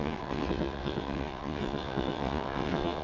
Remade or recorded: remade